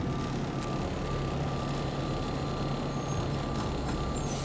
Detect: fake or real real